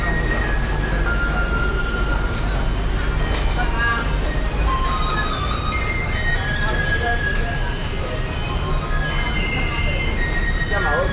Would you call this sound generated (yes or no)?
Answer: no